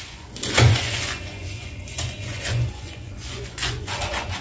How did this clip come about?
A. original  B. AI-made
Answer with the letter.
B